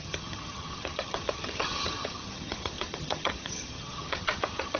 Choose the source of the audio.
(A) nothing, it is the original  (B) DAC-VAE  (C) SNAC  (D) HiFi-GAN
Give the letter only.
D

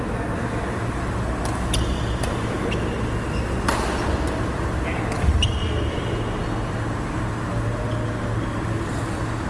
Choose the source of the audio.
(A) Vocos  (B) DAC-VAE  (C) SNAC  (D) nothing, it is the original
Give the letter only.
D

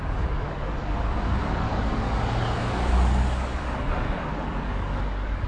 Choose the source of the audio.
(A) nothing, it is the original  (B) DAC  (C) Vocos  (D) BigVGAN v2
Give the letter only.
B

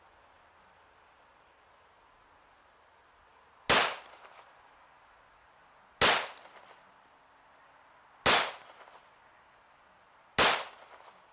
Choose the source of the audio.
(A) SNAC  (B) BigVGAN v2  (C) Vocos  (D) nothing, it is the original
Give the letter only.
D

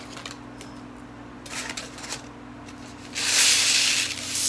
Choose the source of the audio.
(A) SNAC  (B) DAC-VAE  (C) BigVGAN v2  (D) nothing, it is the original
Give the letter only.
D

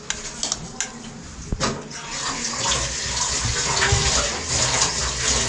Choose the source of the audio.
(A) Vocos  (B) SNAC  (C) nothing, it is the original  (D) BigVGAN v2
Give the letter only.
C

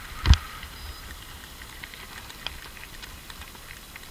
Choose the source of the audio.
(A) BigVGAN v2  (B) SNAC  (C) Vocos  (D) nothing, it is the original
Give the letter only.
D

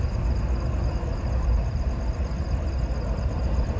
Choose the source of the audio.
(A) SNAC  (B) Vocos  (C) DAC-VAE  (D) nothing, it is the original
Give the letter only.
D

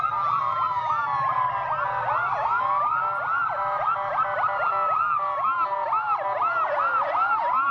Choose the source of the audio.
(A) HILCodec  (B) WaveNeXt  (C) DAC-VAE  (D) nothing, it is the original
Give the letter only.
D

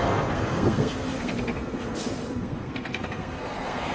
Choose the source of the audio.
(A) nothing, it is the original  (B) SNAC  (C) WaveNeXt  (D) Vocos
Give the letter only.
B